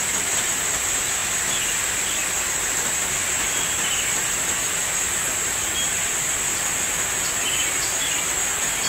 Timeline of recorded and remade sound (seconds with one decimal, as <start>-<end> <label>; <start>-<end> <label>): 0.0-1.2 remade; 1.2-3.3 recorded; 3.3-4.8 remade; 4.8-7.1 recorded; 7.1-8.9 remade